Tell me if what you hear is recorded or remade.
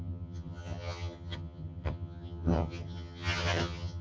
remade